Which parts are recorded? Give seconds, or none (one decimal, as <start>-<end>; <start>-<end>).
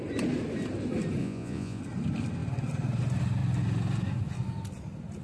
0.0-1.2; 1.8-5.2